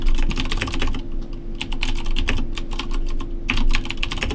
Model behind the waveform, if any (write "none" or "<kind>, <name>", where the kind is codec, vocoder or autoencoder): none